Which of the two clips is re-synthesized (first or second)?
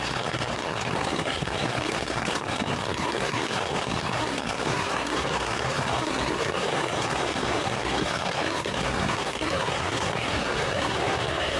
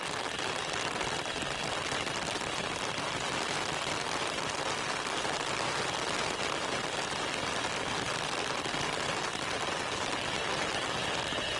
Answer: first